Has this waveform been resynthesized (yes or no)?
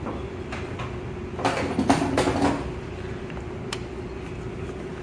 no